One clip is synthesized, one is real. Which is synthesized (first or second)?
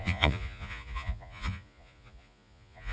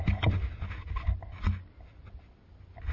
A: first